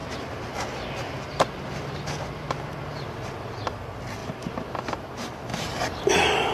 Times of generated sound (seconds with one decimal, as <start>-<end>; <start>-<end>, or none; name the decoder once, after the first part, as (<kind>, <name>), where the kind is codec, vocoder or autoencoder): 4.2-4.8 (vocoder, BigVGAN v2); 5.5-6.1